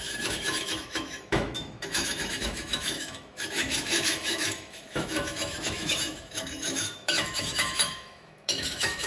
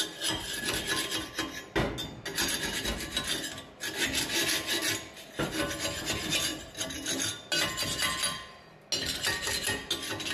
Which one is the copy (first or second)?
first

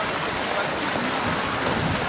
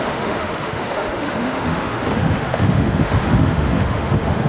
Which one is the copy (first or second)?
second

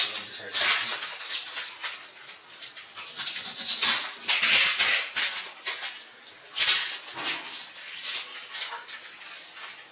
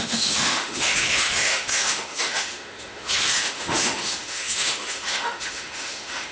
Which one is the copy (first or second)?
second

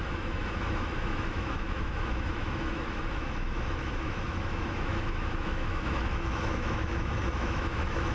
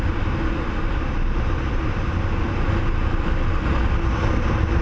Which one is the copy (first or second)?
first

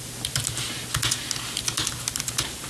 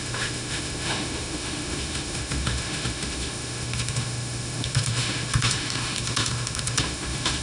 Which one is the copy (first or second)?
second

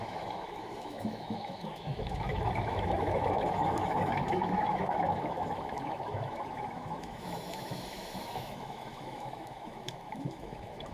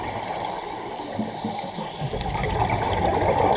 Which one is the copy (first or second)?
first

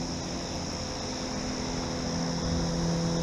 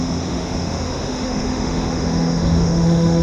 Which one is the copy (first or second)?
second